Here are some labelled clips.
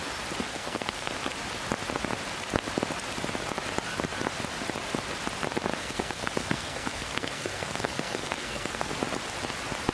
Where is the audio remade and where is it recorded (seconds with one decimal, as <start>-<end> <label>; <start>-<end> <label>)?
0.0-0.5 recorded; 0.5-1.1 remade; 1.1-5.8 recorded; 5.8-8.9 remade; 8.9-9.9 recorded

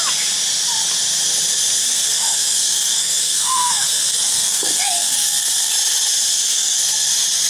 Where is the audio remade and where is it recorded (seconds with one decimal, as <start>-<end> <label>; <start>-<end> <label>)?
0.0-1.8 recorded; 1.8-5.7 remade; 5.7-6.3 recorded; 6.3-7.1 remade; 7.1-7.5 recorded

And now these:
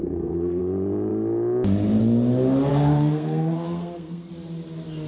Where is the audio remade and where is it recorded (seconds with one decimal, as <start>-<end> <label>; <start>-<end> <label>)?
0.0-0.6 remade; 0.6-2.7 recorded; 2.7-4.3 remade; 4.3-5.1 recorded

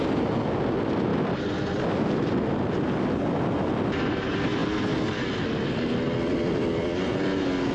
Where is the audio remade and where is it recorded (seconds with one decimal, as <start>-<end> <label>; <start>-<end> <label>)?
0.0-7.7 recorded

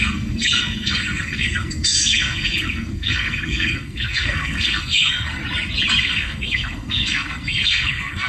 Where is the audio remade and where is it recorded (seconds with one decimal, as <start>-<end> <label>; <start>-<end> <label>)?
0.0-5.4 remade; 5.4-6.0 recorded; 6.0-8.3 remade

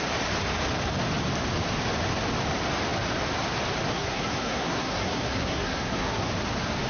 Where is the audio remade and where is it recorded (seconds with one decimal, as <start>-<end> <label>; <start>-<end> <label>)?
0.0-3.9 recorded; 3.9-6.3 remade; 6.3-6.9 recorded